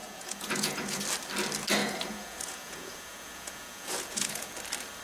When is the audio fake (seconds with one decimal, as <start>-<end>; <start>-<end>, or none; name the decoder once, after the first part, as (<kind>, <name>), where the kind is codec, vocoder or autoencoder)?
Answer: 0.0-1.0 (vocoder, Vocos); 1.8-4.5